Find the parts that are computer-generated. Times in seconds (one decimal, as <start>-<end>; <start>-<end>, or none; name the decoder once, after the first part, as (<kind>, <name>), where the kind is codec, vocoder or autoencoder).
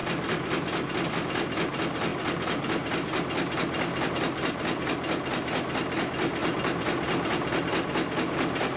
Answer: none